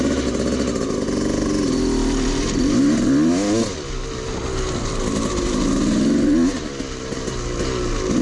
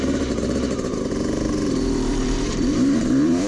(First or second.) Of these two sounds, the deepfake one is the second